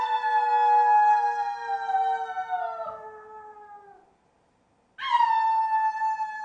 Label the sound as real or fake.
real